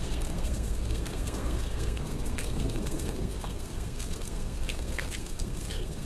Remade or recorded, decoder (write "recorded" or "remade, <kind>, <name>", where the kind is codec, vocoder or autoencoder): remade, codec, SNAC